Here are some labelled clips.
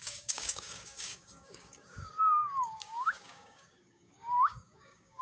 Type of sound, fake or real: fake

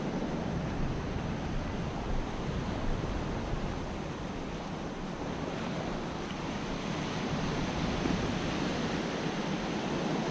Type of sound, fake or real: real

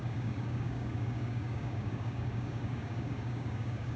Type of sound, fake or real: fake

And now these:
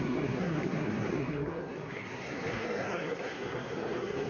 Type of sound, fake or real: fake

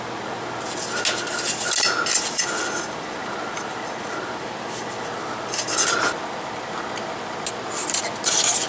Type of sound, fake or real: real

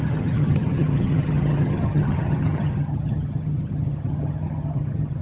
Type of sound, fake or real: fake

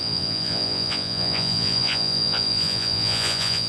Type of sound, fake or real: fake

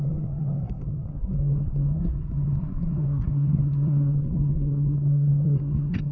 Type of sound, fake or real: fake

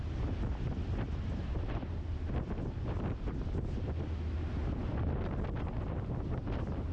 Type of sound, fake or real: real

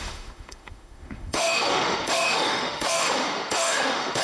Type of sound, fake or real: fake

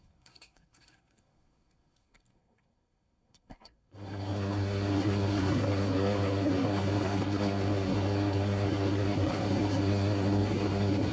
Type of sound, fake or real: fake